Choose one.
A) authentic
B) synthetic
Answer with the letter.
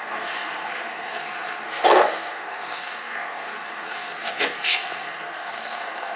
B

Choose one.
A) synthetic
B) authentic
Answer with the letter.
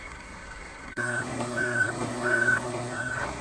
A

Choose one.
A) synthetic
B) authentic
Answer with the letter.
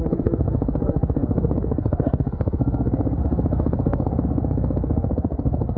A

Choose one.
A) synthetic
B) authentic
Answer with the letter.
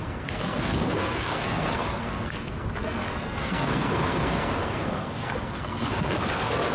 A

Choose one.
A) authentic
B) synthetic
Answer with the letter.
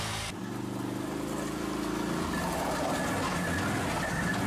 A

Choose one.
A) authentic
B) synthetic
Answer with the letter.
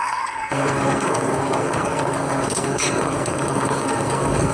B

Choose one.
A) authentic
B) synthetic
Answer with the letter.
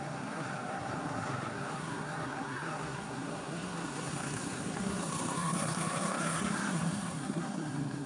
B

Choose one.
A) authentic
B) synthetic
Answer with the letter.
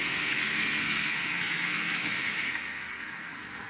B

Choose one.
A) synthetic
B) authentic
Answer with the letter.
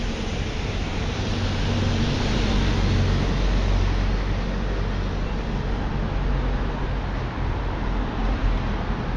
B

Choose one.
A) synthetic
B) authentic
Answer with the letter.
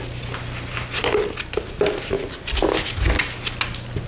B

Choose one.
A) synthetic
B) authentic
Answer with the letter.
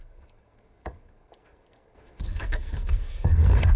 A